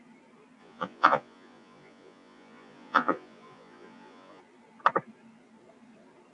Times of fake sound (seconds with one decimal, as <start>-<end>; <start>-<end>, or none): 0.6-4.4

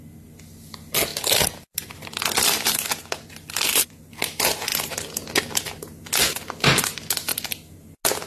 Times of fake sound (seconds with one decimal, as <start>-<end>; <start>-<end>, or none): none